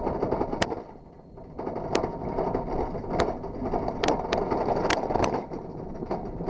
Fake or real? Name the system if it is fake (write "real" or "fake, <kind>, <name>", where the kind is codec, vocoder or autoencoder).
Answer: real